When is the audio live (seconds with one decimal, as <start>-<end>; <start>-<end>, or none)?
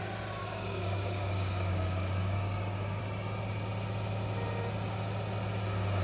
0.0-0.4; 3.0-6.0